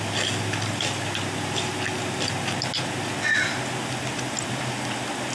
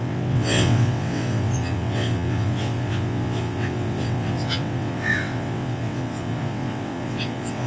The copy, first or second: second